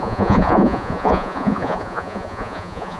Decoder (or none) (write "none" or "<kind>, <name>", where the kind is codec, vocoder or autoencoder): vocoder, Vocos